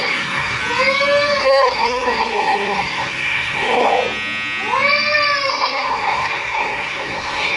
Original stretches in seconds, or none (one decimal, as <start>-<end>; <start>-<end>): 0.6-1.4; 3.9-5.5